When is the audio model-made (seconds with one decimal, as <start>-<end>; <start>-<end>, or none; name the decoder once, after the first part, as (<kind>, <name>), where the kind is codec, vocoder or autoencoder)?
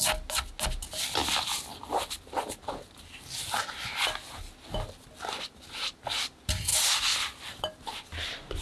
none